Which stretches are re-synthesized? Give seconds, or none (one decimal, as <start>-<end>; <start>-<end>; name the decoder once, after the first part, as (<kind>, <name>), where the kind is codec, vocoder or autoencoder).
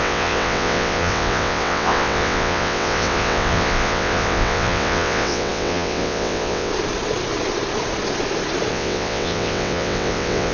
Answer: 0.0-6.7 (vocoder, WaveNeXt); 8.7-10.5